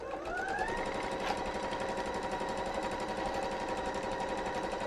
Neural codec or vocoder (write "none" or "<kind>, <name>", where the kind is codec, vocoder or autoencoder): none